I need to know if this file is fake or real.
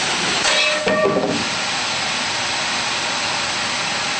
real